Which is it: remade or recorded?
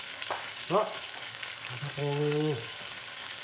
remade